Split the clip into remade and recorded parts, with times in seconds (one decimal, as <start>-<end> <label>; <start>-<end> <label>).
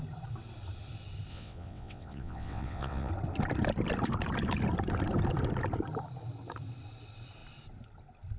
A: 0.0-1.3 recorded; 1.3-3.1 remade; 3.1-8.4 recorded